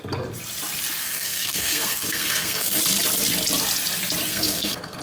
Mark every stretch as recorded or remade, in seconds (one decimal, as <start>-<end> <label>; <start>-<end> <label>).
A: 0.0-1.0 recorded; 1.0-2.8 remade; 2.8-4.3 recorded; 4.3-5.0 remade